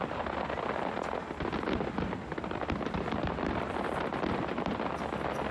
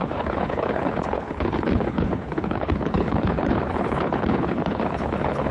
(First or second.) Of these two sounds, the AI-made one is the second